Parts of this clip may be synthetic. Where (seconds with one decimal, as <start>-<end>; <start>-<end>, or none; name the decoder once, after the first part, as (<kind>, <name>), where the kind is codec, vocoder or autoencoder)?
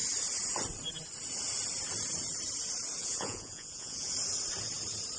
3.0-4.1 (vocoder, Vocos)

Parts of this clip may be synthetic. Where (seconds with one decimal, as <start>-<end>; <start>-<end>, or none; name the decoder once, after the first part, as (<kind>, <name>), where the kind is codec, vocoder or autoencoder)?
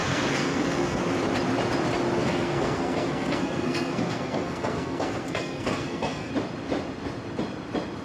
0.0-1.0 (codec, SNAC); 2.2-6.3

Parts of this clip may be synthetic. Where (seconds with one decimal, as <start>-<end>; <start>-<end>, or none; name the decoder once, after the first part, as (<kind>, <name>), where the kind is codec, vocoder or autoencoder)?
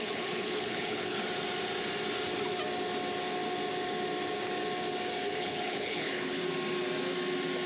0.0-1.2 (codec, HILCodec); 5.4-6.4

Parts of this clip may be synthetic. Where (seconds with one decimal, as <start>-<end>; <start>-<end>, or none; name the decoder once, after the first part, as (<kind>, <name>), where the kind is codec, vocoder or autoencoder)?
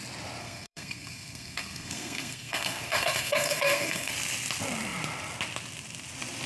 0.4-4.1 (codec, SNAC)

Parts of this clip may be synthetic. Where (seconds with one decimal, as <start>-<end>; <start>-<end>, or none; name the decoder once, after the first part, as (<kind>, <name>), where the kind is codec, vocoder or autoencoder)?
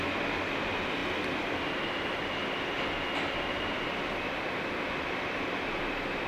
none